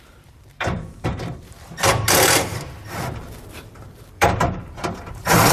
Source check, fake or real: fake